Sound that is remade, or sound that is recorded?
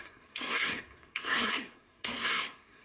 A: remade